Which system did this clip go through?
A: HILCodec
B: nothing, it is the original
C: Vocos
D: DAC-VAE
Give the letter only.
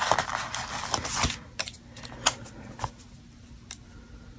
B